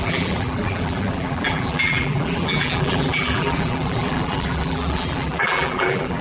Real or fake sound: fake